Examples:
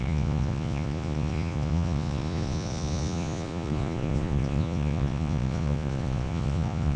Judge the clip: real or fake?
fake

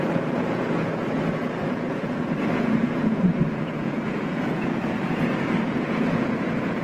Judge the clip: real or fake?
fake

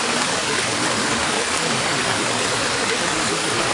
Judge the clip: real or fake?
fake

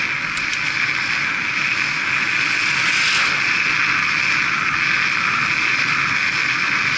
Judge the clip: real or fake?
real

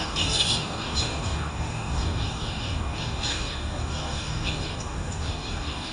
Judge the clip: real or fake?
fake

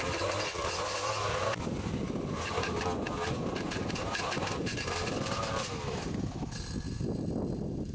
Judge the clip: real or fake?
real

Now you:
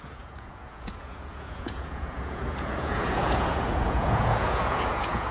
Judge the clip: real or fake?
fake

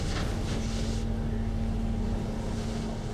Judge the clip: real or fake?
real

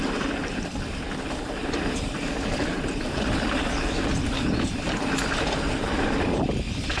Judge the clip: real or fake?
fake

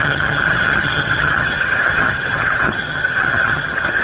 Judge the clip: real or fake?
fake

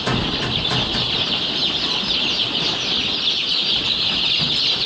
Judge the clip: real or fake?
real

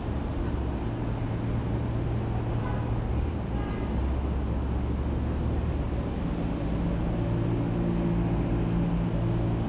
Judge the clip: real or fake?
real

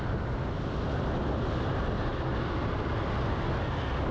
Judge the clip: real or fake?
real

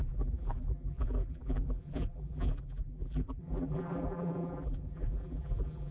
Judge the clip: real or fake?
fake